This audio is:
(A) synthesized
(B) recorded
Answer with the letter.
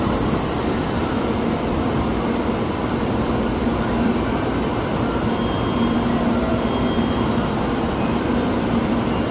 A